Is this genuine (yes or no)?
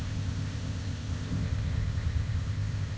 no